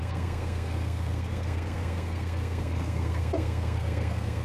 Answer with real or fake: fake